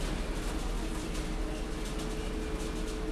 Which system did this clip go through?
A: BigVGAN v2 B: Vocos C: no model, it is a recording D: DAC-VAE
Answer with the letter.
C